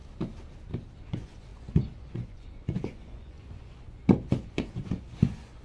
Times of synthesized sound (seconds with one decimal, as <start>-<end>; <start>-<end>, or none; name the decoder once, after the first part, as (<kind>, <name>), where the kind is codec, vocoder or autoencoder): 1.0-5.6 (vocoder, Vocos)